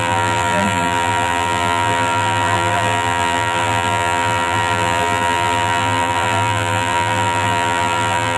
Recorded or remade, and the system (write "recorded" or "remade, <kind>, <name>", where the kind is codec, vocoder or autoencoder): remade, vocoder, BigVGAN v2